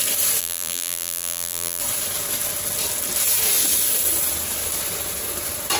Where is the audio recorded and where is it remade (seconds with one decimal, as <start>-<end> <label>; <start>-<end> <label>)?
0.0-0.4 recorded; 0.4-1.8 remade; 1.8-5.8 recorded